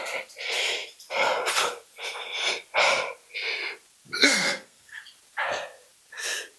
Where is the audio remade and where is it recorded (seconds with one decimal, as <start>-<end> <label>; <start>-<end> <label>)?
0.0-4.2 recorded; 4.2-5.0 remade; 5.0-6.6 recorded